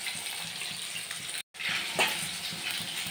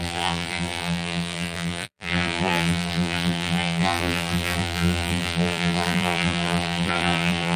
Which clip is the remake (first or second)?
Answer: second